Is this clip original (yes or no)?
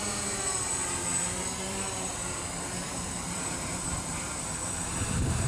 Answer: no